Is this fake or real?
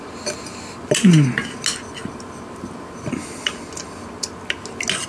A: real